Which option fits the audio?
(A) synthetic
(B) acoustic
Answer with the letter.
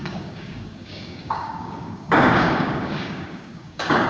A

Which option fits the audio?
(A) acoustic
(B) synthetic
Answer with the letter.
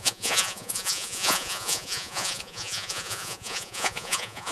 B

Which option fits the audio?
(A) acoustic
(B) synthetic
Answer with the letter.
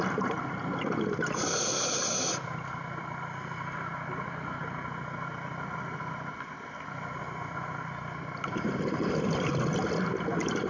A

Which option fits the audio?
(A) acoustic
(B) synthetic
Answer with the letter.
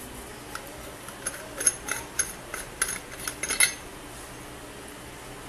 A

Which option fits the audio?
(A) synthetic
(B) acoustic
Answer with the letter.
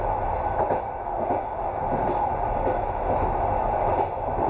B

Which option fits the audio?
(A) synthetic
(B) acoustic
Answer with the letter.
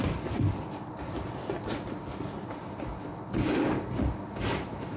B